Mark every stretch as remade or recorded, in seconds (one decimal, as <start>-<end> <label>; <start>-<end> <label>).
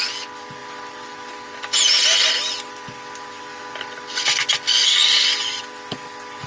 0.0-6.5 recorded